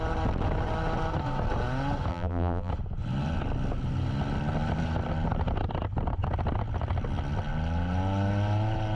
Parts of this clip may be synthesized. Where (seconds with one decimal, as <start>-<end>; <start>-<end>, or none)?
2.1-2.7